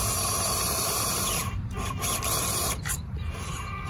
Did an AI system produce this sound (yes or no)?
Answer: yes